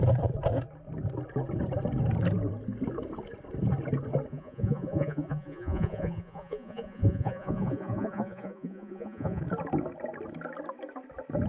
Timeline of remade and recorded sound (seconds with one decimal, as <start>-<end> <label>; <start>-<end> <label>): 0.0-4.3 recorded; 4.3-9.4 remade; 9.4-11.5 recorded